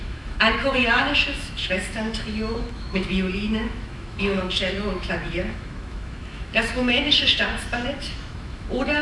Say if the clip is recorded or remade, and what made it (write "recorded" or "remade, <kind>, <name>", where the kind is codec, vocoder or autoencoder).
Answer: remade, autoencoder, DAC-VAE